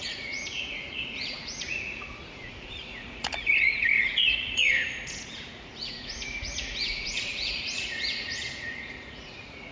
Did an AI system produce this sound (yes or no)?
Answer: yes